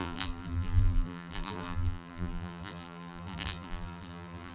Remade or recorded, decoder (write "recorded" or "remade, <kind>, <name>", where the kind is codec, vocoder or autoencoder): remade, vocoder, BigVGAN v2